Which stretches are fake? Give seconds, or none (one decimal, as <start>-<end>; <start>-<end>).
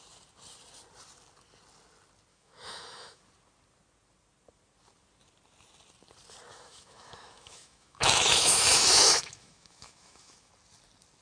2.3-3.2; 6.5-10.5